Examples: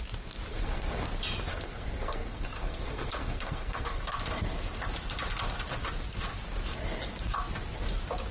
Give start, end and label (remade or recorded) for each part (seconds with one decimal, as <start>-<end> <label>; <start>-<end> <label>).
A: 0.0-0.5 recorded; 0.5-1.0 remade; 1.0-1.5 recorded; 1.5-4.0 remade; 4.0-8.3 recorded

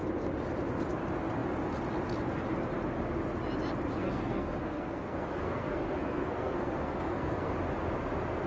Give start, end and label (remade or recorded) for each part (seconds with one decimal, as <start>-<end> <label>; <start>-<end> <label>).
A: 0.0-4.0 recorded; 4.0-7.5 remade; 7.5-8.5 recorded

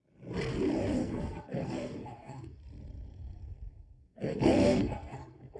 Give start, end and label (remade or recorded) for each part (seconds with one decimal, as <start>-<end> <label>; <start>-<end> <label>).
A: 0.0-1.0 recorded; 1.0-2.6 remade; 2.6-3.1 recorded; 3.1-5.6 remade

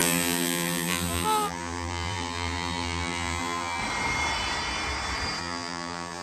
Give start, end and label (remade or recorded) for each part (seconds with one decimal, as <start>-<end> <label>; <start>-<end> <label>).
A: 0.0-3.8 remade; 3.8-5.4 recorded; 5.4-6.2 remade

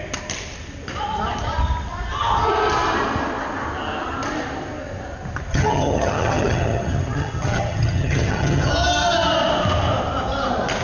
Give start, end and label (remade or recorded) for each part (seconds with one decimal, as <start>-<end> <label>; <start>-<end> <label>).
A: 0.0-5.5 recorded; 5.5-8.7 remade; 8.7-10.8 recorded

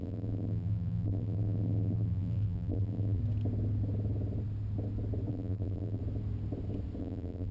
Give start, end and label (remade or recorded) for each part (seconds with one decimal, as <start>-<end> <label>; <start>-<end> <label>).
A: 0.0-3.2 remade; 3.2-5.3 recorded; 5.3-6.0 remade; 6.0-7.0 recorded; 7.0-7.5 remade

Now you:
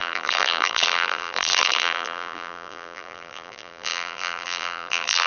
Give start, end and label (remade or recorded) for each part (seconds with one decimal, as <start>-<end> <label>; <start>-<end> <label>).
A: 0.0-5.3 remade

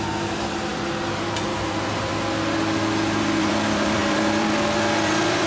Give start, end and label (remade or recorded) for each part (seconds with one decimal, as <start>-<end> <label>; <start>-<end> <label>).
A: 0.0-0.7 remade; 0.7-1.6 recorded; 1.6-2.1 remade; 2.1-3.4 recorded; 3.4-5.5 remade